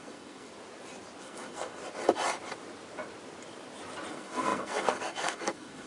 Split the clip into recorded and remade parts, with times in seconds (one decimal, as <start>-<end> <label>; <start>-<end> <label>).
0.0-0.5 remade; 0.5-1.2 recorded; 1.2-1.8 remade; 1.8-4.1 recorded; 4.1-5.9 remade